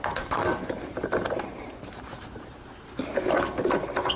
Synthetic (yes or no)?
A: yes